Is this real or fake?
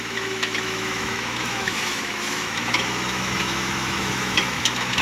fake